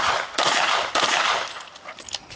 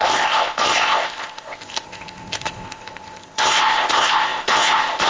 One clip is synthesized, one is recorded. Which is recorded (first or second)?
first